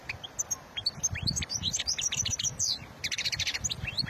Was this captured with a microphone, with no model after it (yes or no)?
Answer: yes